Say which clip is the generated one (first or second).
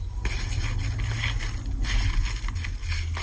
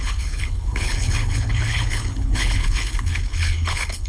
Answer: second